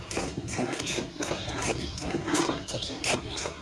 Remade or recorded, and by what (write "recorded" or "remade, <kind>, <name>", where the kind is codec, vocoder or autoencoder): remade, codec, SNAC